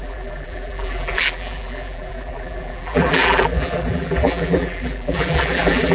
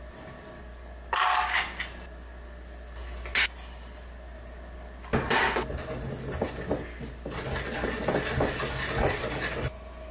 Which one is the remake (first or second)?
first